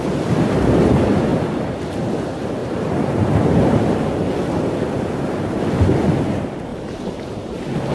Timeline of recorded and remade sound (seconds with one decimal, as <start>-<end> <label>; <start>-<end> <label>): 0.0-1.3 recorded; 1.3-2.0 remade; 2.0-2.6 recorded; 2.6-3.9 remade; 3.9-6.7 recorded; 6.7-7.9 remade